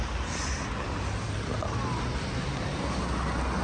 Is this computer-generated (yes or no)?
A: no